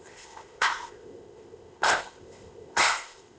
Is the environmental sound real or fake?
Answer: fake